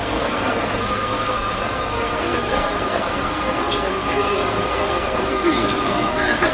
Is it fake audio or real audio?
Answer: fake